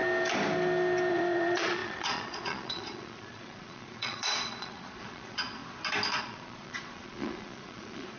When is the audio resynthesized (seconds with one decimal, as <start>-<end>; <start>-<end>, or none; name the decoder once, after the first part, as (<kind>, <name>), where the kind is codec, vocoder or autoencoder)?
1.1-5.6 (vocoder, Vocos); 6.2-8.2